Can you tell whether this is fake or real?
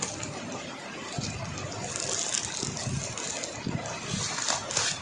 real